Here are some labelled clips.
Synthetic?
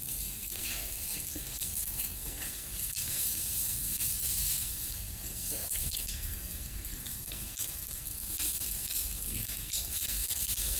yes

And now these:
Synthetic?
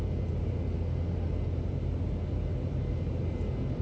no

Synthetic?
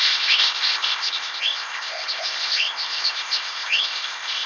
yes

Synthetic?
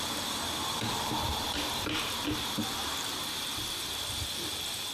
yes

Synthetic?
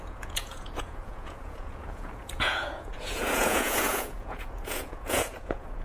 yes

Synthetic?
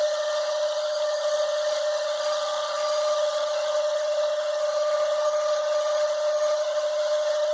yes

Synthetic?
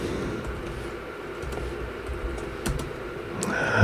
no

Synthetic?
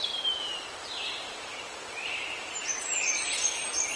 yes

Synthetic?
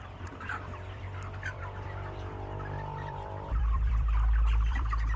yes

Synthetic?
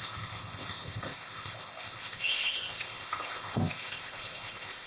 yes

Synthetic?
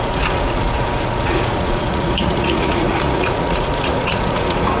yes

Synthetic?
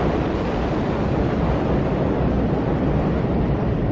yes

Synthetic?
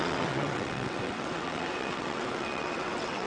yes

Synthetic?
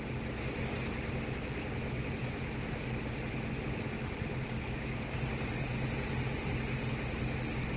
no